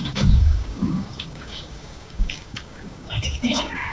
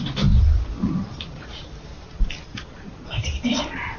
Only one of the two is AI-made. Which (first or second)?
first